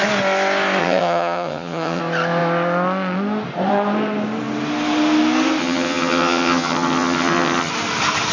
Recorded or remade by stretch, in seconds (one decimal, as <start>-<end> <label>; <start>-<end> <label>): 0.0-0.8 recorded; 0.8-2.0 remade; 2.0-5.6 recorded; 5.6-7.7 remade; 7.7-8.3 recorded